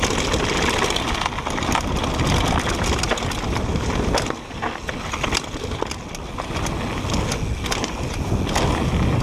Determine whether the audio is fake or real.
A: real